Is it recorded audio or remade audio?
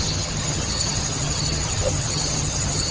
remade